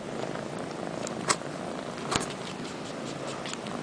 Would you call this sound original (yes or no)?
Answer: yes